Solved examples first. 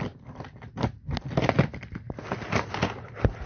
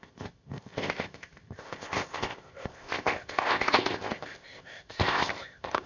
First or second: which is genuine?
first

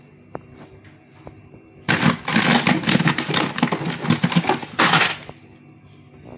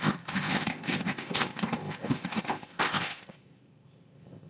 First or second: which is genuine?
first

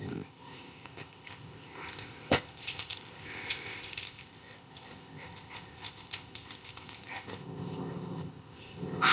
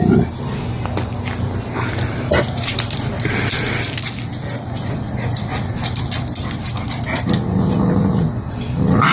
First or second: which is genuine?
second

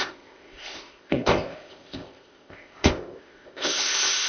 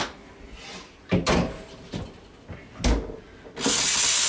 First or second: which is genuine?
second